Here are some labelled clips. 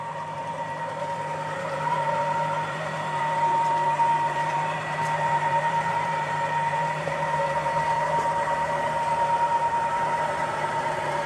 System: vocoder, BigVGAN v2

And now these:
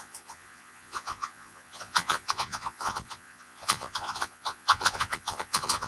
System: vocoder, Vocos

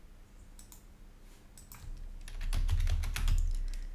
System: none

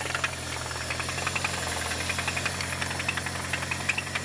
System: none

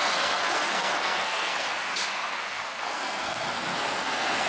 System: codec, SNAC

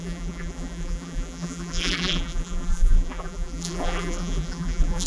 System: vocoder, BigVGAN v2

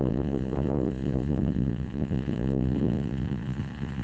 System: vocoder, Vocos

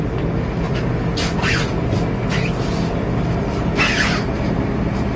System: none